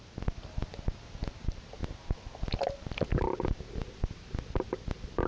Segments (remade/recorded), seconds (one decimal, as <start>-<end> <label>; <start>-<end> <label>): 0.0-5.3 recorded